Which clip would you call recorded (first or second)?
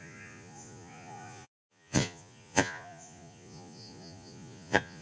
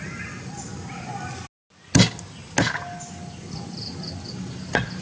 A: second